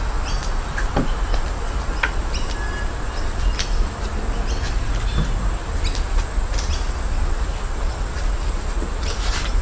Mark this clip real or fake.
real